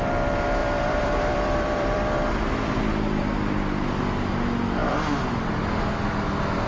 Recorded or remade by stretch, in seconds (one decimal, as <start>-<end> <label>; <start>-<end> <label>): 0.0-0.6 recorded; 0.6-3.2 remade; 3.2-4.8 recorded; 4.8-5.6 remade; 5.6-6.7 recorded